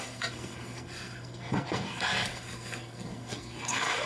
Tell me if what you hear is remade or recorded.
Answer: remade